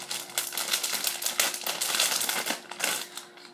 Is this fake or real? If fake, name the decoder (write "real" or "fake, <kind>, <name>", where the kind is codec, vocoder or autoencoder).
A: real